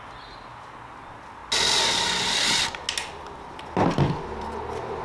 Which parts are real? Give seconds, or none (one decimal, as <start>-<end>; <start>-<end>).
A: 0.0-5.0